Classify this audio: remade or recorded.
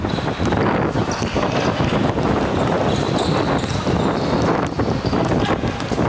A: recorded